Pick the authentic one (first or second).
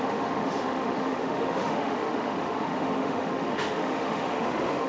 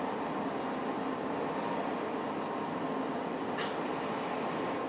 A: second